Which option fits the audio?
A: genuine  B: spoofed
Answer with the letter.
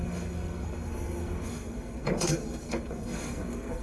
B